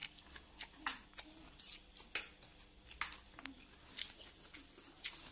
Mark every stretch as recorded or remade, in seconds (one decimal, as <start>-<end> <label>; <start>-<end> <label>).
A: 0.0-5.3 recorded